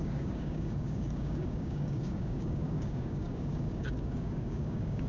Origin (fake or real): fake